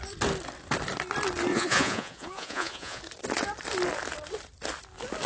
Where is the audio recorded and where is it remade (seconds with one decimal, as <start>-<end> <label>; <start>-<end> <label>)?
0.0-1.5 recorded; 1.5-3.0 remade; 3.0-5.3 recorded